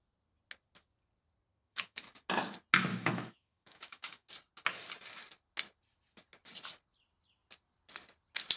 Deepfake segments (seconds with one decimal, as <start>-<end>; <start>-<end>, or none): 1.5-2.0; 2.9-4.3